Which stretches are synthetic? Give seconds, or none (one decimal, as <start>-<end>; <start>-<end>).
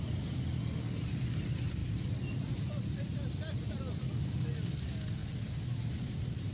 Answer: 1.8-3.0